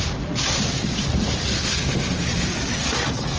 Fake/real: real